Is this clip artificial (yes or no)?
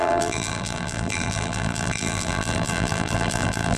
yes